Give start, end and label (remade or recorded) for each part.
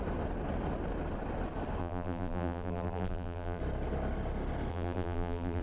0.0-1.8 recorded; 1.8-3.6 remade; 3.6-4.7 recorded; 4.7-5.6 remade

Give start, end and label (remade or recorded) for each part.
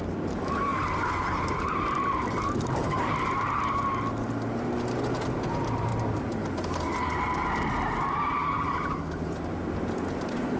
0.0-0.7 remade; 0.7-1.6 recorded; 1.6-5.9 remade; 5.9-9.2 recorded; 9.2-10.6 remade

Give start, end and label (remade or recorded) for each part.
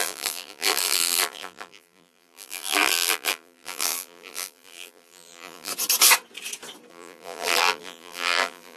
0.0-5.7 remade; 5.7-6.9 recorded; 6.9-8.8 remade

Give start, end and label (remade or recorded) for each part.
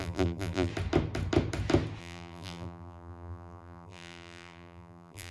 0.0-0.7 remade; 0.7-2.0 recorded; 2.0-5.3 remade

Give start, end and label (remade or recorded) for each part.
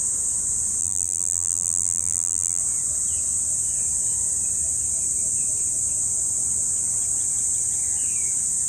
0.0-0.8 recorded; 0.8-2.6 remade; 2.6-8.7 recorded